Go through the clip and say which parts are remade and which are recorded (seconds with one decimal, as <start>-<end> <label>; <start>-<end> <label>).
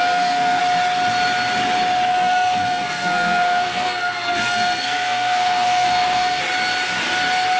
0.0-0.6 remade; 0.6-2.1 recorded; 2.1-6.4 remade; 6.4-7.6 recorded